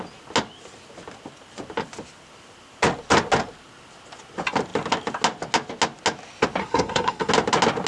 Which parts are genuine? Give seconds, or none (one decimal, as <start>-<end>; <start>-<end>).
0.0-6.6; 7.3-7.9